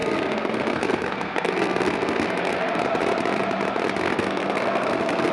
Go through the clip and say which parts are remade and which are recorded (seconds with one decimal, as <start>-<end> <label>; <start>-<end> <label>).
0.0-2.8 remade; 2.8-4.0 recorded; 4.0-5.3 remade